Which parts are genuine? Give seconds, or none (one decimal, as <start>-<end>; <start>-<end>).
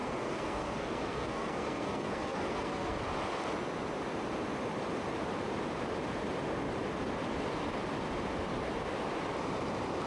3.0-10.1